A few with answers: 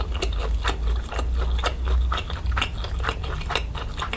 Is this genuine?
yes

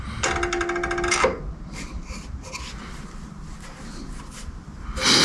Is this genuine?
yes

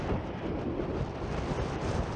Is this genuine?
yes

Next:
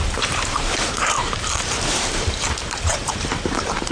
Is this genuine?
no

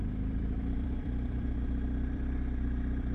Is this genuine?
no